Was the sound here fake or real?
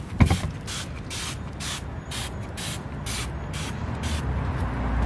real